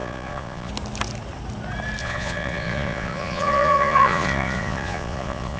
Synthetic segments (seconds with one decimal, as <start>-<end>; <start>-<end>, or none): 0.0-0.7; 2.0-5.6